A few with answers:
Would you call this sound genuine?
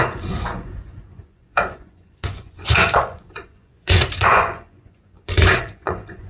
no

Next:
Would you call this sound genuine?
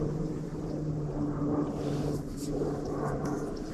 no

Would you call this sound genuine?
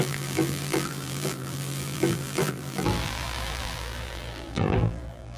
no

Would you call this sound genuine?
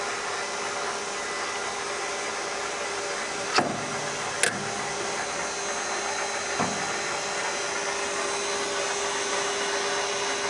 yes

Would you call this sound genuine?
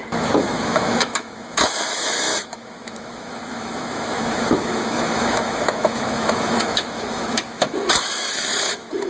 no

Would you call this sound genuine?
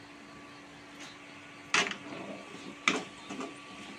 yes